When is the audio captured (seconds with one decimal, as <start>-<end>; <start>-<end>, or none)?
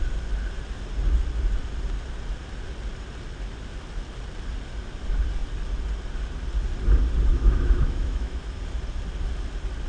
0.0-7.3; 8.6-9.9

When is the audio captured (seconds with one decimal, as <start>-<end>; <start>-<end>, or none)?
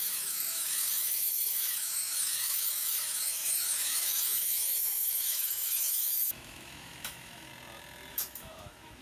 7.5-8.1